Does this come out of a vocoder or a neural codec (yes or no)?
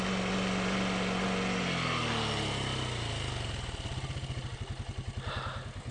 no